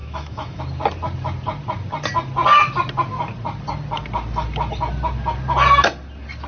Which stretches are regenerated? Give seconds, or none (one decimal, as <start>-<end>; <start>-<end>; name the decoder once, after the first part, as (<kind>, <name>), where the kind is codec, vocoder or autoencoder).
0.0-0.6 (autoencoder, DAC-VAE)